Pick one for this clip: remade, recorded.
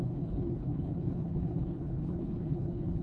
remade